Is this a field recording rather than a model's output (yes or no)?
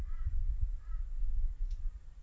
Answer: yes